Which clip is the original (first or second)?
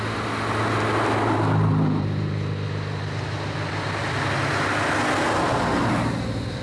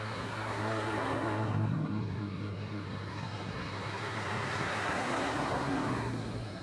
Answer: first